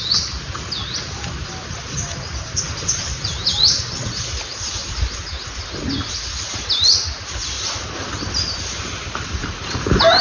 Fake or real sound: real